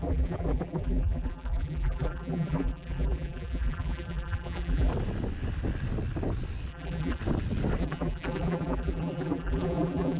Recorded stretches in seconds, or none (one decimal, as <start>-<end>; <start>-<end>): 4.9-6.7; 7.2-7.8